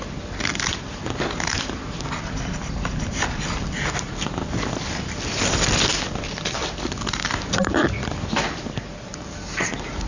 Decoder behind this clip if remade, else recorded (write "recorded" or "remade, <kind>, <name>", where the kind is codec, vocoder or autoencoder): recorded